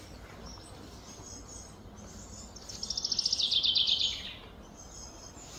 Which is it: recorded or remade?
recorded